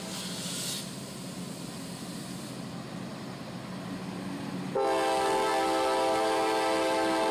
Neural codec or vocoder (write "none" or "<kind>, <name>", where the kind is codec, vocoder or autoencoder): none